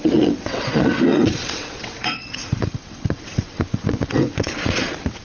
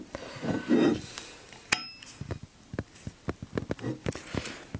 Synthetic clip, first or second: first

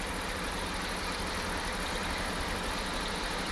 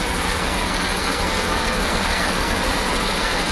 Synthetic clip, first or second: second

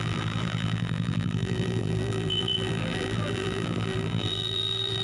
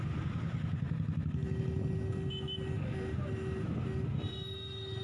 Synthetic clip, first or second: first